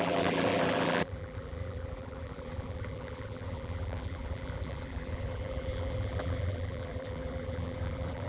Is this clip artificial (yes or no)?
yes